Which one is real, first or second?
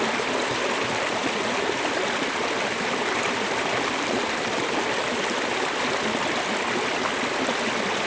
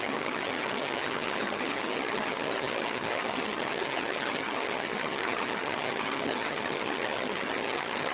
first